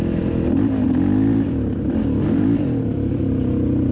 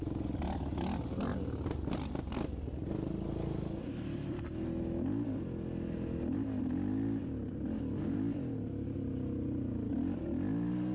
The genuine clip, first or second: second